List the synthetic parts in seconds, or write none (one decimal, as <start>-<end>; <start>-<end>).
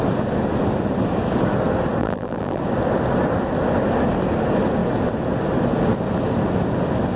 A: 2.0-2.6